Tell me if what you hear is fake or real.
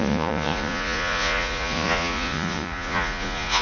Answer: fake